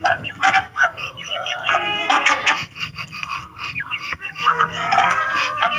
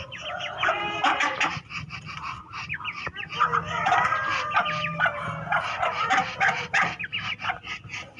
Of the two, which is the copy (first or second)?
first